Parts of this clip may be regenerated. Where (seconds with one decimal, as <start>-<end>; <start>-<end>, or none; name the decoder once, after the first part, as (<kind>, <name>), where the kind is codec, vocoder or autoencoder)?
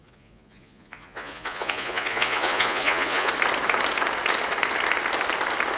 0.0-3.3 (vocoder, Vocos)